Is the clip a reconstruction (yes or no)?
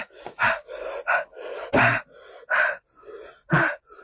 no